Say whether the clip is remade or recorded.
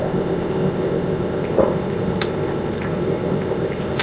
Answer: remade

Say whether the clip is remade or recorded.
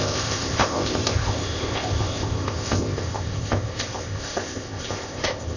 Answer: remade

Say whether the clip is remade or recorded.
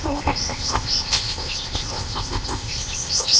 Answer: remade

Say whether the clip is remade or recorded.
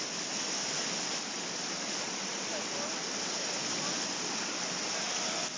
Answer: recorded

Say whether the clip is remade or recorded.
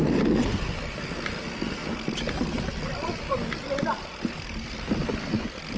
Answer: recorded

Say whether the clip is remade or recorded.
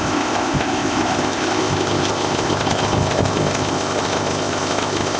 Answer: remade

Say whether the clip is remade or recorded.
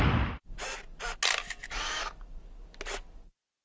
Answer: recorded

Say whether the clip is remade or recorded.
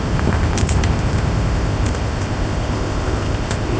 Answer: remade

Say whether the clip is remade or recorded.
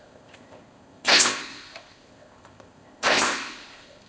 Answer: remade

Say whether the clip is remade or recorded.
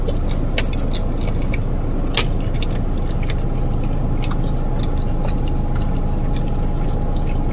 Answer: recorded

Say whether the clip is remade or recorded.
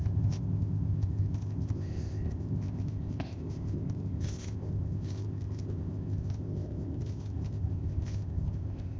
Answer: remade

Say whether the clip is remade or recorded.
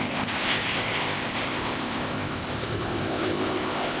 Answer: remade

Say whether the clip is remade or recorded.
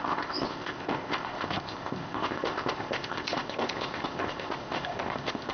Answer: remade